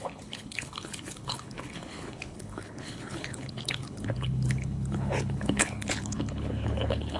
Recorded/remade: remade